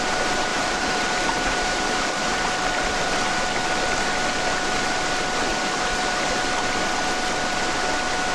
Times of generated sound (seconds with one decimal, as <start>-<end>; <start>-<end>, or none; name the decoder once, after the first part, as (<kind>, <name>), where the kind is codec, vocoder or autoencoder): 0.5-3.0 (vocoder, BigVGAN v2); 5.5-6.4

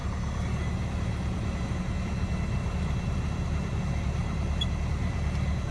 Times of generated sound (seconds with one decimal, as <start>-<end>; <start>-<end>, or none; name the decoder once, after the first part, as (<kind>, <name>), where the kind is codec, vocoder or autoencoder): 2.6-3.8 (vocoder, BigVGAN v2); 4.2-5.7

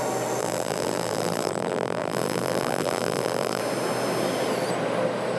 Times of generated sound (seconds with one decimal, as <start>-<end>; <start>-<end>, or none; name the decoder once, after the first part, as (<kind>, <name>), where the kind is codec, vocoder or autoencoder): 0.4-3.6 (vocoder, BigVGAN v2)

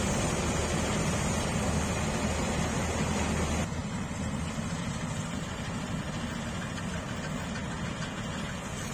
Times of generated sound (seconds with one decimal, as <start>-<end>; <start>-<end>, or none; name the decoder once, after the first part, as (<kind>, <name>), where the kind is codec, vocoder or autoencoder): 3.8-5.9 (vocoder, BigVGAN v2)